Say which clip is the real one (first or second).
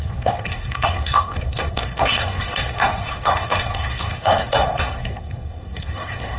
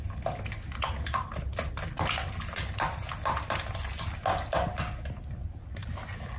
second